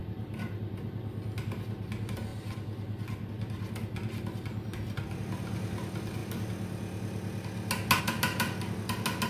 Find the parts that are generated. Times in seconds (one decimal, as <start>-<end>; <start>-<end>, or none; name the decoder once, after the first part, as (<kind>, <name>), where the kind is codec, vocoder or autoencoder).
none